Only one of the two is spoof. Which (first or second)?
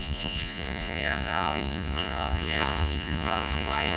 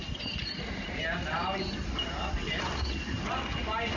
first